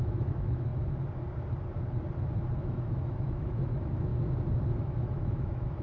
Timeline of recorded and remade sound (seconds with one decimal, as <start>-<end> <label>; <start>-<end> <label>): 0.0-0.7 remade; 0.7-2.5 recorded; 2.5-4.1 remade; 4.1-4.8 recorded; 4.8-5.8 remade